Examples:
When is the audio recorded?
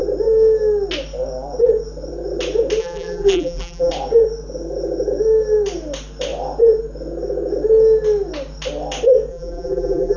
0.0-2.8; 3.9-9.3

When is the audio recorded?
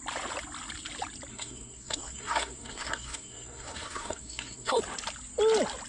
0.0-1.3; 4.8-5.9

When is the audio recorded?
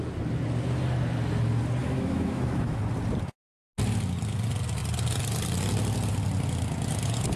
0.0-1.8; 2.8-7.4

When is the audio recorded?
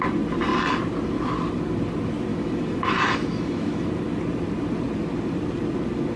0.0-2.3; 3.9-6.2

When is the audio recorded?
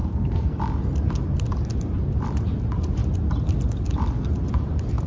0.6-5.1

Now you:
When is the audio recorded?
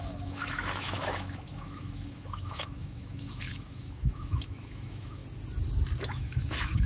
5.2-6.0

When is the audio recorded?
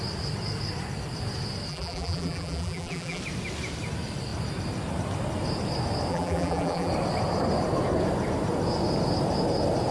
0.0-1.7; 3.2-6.1; 6.9-9.9